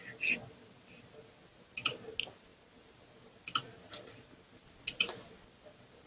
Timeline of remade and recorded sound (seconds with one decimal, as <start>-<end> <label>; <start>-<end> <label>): 0.0-6.1 recorded